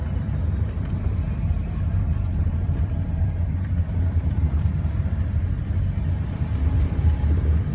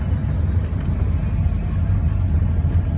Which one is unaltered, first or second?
second